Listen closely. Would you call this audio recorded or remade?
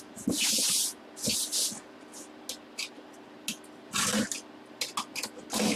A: recorded